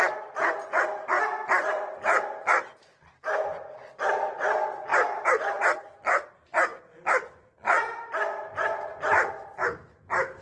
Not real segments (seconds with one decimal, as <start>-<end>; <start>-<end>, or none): 4.9-5.6